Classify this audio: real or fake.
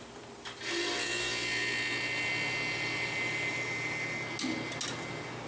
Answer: real